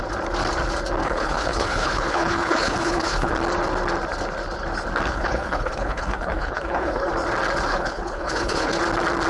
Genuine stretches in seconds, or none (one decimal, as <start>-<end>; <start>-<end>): 0.0-1.0; 3.3-5.1; 7.1-7.7; 8.8-9.3